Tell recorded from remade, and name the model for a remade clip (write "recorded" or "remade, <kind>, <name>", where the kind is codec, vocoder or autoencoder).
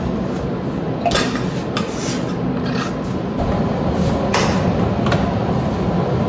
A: recorded